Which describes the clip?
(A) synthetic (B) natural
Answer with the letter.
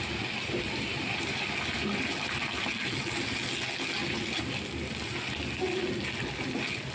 B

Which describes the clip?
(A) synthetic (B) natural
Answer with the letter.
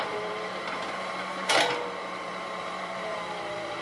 A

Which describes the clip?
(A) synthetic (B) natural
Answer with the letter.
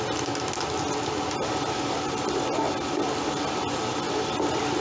B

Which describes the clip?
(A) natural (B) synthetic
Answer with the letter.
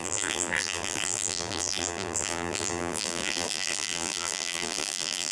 B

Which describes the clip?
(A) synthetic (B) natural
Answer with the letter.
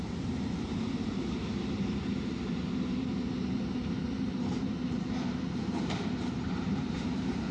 A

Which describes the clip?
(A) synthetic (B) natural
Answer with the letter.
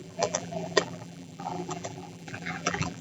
A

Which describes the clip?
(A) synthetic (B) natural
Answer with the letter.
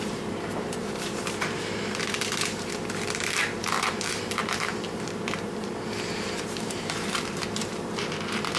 A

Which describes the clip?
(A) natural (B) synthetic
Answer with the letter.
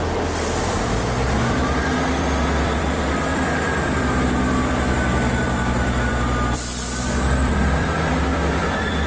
B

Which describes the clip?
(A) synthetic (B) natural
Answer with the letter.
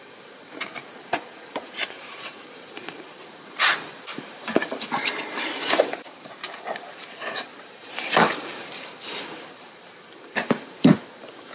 A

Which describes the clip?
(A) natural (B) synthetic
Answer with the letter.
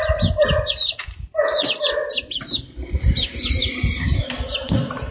B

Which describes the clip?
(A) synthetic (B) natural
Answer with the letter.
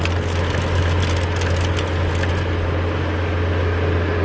B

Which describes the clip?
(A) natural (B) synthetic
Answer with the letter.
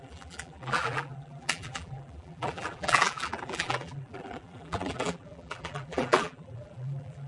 B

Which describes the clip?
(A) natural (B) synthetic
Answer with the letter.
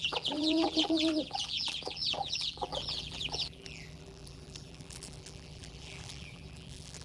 B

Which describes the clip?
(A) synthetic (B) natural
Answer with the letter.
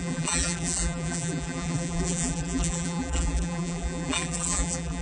A